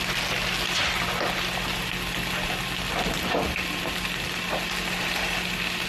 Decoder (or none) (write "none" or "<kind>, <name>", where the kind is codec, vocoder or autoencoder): none